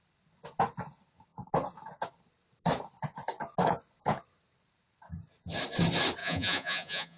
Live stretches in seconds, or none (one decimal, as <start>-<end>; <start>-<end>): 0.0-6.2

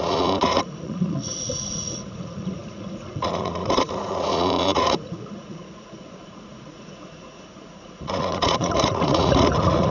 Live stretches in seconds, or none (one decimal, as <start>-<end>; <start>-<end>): none

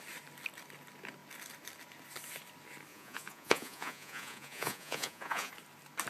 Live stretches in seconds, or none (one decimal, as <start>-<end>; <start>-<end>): 0.0-2.9; 5.5-6.1

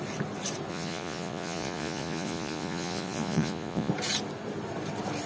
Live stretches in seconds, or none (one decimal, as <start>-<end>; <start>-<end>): 0.0-0.7; 3.9-5.3

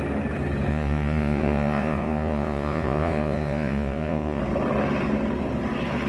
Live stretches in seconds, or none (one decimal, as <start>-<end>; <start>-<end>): 0.0-0.7; 4.4-6.1

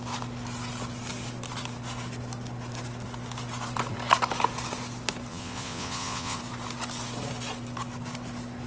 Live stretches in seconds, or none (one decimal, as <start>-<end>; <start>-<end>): 0.0-5.3; 6.4-8.7